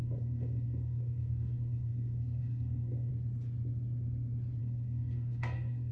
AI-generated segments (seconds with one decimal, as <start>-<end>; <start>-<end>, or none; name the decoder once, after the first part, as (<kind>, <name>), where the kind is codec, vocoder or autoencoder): 0.0-3.1 (codec, SNAC); 4.6-5.9